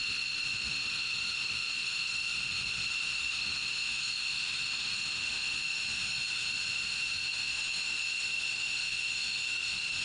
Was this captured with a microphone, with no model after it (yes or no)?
no